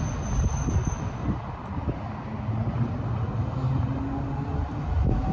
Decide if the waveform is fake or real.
real